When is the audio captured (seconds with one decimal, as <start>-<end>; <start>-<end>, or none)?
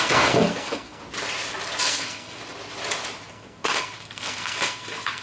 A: 1.0-1.8; 2.4-3.3